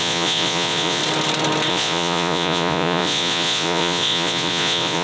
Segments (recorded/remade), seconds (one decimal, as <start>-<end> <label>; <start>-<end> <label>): 0.0-1.0 remade; 1.0-1.7 recorded; 1.7-5.0 remade